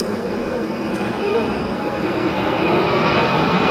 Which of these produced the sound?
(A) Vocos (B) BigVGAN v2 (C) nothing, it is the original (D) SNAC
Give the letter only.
D